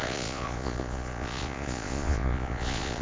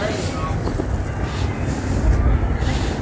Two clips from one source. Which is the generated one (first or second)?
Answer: first